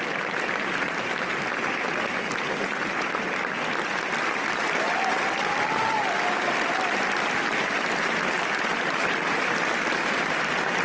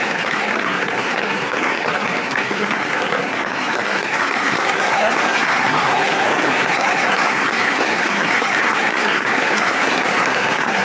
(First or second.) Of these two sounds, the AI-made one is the second